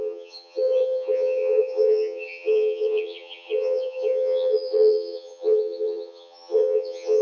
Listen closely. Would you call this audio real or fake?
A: fake